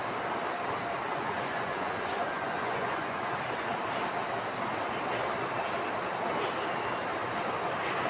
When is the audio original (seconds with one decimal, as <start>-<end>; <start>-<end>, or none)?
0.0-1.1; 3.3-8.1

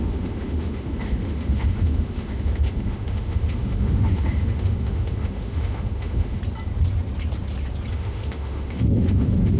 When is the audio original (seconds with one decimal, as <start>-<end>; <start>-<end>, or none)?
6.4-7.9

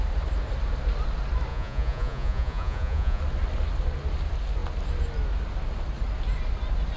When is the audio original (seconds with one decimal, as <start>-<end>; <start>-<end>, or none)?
0.0-1.5; 3.2-7.0